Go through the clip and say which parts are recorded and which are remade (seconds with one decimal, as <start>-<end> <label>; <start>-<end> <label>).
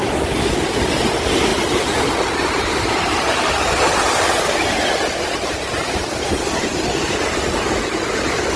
0.0-8.6 recorded